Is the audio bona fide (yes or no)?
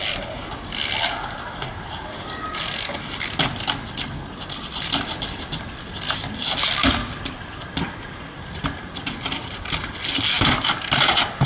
yes